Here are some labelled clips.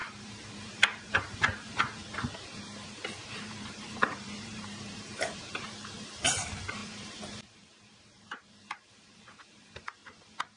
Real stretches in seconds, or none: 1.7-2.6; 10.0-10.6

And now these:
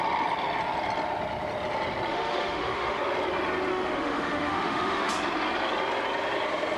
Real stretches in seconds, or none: 0.0-2.1; 3.0-3.7; 5.1-6.8